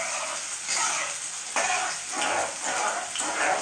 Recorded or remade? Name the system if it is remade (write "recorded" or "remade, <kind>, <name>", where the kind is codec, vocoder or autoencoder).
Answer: recorded